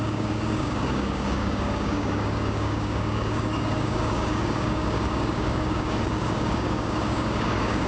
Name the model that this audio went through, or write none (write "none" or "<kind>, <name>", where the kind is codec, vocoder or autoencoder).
codec, DAC